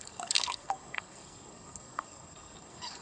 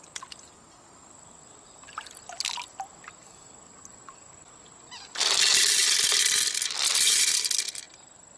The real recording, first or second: second